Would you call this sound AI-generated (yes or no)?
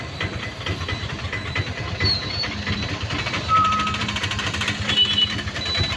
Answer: yes